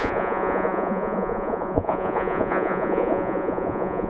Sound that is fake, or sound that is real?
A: fake